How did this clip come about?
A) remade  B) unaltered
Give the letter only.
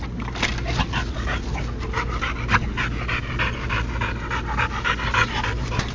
B